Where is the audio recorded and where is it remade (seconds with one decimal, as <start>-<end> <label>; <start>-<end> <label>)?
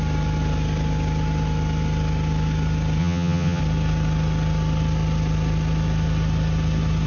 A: 0.0-3.0 recorded; 3.0-3.6 remade; 3.6-7.1 recorded